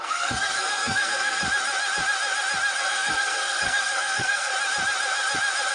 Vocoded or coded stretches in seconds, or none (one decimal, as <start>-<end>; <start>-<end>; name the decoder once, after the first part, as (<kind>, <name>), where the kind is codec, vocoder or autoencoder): 0.0-1.4 (codec, SNAC); 2.8-4.5